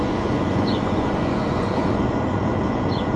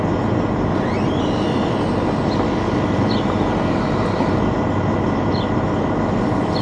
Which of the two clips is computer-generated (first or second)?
first